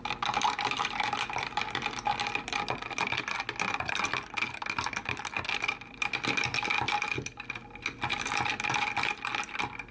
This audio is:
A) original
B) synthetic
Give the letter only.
A